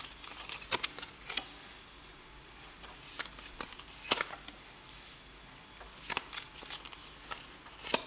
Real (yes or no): yes